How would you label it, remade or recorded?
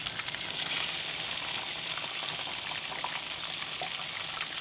recorded